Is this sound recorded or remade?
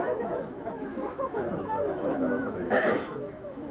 remade